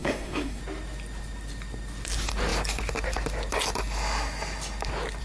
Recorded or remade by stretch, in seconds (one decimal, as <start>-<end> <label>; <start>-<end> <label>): 0.0-0.6 remade; 0.6-5.2 recorded